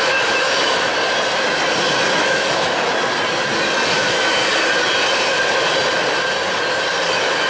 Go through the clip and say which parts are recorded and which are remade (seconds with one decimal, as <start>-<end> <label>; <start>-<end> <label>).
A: 0.0-0.9 remade; 0.9-2.2 recorded; 2.2-2.9 remade; 2.9-3.9 recorded; 3.9-4.4 remade; 4.4-7.1 recorded; 7.1-7.5 remade